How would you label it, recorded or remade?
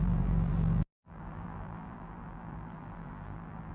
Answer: remade